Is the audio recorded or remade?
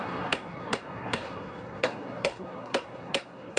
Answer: remade